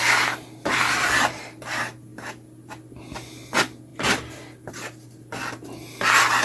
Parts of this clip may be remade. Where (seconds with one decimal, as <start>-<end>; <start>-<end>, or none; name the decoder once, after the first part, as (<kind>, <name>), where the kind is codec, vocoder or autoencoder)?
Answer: none